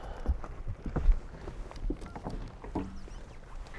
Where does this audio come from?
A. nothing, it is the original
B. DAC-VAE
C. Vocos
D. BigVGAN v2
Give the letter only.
A